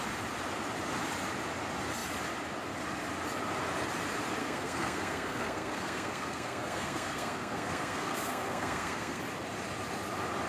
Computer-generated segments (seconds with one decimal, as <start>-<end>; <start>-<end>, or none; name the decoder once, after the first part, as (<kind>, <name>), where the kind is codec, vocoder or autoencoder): 4.4-9.2 (codec, SNAC)